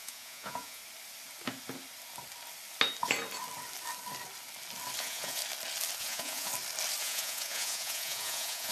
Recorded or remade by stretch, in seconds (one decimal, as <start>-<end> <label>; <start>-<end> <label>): 0.0-0.8 remade; 0.8-5.0 recorded; 5.0-5.4 remade; 5.4-6.0 recorded; 6.0-6.5 remade; 6.5-7.0 recorded; 7.0-8.7 remade